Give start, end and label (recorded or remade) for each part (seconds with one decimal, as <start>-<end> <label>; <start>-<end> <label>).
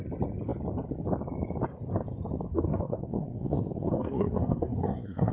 0.0-2.5 recorded; 2.5-5.3 remade